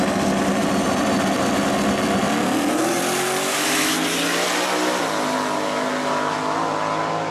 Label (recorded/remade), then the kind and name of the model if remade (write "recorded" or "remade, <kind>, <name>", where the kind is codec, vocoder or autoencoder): recorded